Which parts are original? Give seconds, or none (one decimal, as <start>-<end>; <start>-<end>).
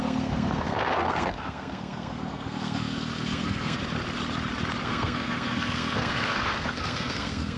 3.8-4.8